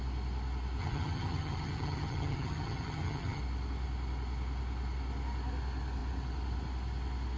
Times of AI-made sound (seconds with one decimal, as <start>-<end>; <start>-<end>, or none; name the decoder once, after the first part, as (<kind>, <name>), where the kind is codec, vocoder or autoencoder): 0.8-3.4 (vocoder, HiFi-GAN)